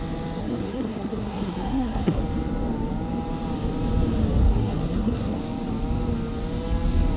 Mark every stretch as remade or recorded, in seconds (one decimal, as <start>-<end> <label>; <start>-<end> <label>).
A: 0.0-0.4 recorded; 0.4-2.2 remade; 2.2-4.4 recorded; 4.4-5.4 remade; 5.4-7.2 recorded